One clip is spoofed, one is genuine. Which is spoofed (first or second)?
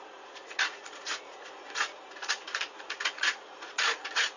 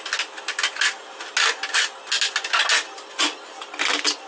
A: first